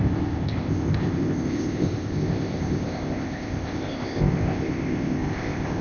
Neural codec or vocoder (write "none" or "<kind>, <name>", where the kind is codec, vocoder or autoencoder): codec, ZipCodec